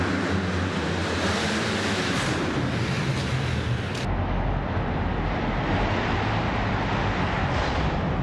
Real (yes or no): yes